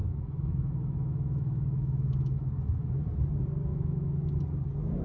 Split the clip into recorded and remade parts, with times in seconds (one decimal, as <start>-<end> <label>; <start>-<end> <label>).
0.0-3.0 remade; 3.0-3.7 recorded; 3.7-4.3 remade; 4.3-5.0 recorded